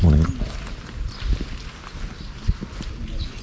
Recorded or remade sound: recorded